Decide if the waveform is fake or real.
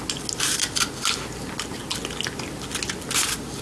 real